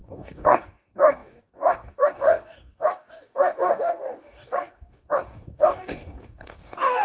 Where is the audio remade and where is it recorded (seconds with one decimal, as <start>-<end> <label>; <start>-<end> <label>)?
0.0-7.0 remade